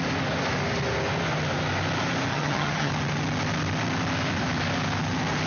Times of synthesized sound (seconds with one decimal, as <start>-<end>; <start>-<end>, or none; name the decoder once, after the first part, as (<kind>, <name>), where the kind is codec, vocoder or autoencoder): 2.3-2.9 (vocoder, HiFi-GAN)